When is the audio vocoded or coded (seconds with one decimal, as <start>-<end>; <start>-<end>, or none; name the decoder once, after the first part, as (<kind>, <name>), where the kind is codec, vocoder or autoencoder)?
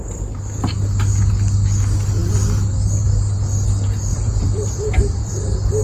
4.1-5.3 (vocoder, BigVGAN v2)